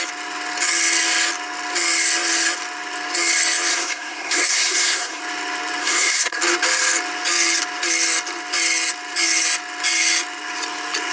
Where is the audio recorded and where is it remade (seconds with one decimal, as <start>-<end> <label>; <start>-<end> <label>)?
0.0-3.7 recorded; 3.7-5.2 remade; 5.2-5.8 recorded; 5.8-6.4 remade; 6.4-11.1 recorded